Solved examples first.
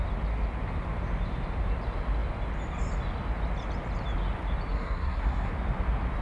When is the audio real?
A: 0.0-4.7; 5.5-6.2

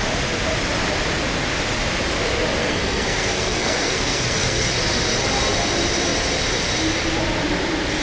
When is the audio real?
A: 0.0-2.6; 4.7-8.0